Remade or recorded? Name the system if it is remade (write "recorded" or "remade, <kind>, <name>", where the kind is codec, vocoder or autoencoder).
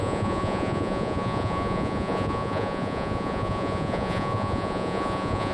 remade, vocoder, Vocos